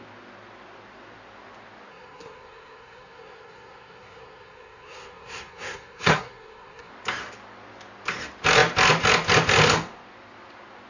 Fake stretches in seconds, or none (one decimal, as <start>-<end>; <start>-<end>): 1.9-6.9